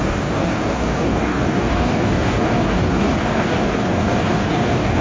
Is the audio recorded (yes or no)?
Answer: no